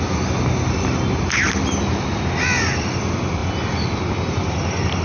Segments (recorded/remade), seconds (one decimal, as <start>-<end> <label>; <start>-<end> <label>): 0.0-5.0 recorded